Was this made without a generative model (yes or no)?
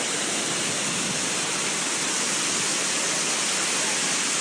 yes